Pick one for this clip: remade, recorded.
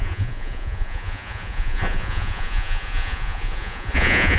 remade